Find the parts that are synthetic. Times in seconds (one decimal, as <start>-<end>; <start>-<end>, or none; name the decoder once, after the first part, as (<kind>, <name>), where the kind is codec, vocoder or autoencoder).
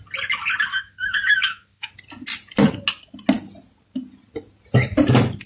0.7-1.9 (autoencoder, DAC-VAE)